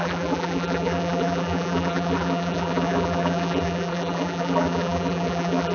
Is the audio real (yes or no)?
no